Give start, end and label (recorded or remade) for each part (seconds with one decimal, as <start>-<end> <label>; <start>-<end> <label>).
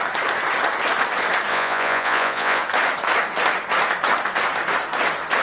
0.0-1.5 recorded; 1.5-2.6 remade; 2.6-5.4 recorded